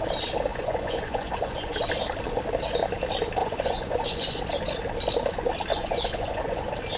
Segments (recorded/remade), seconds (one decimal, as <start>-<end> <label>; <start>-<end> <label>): 0.0-0.5 recorded; 0.5-1.7 remade; 1.7-3.4 recorded; 3.4-4.4 remade; 4.4-5.7 recorded; 5.7-6.6 remade; 6.6-7.0 recorded